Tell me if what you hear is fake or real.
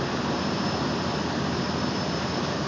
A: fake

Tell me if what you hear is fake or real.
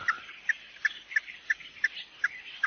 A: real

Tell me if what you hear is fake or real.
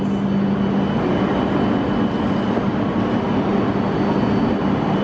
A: real